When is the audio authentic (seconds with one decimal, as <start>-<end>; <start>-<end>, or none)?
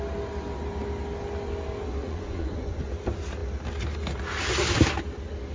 0.0-2.0; 2.9-5.5